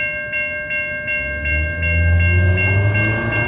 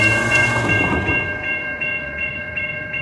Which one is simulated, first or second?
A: second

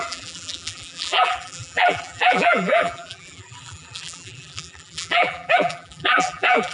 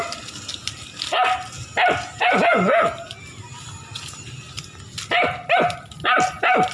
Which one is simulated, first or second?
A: first